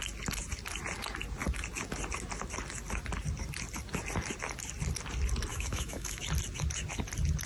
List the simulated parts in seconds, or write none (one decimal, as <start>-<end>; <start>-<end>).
5.5-6.2